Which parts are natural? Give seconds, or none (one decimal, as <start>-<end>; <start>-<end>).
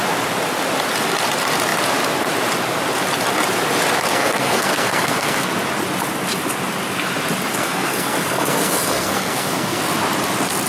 0.0-4.1; 5.5-7.5; 9.8-10.7